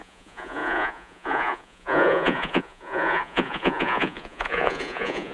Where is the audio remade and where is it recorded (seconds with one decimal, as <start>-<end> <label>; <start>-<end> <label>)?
0.0-5.3 remade